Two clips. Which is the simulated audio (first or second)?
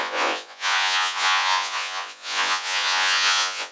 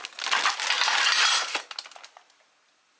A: first